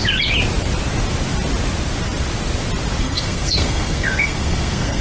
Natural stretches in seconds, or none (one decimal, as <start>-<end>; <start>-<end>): 0.0-3.0